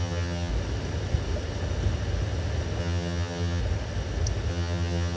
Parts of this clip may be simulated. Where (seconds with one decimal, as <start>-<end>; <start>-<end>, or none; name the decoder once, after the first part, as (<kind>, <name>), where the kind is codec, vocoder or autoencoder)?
0.0-0.5 (vocoder, HiFi-GAN); 2.8-3.6; 4.5-5.2